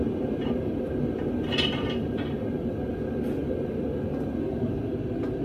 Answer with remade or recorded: recorded